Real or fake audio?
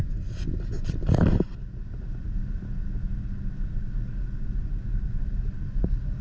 real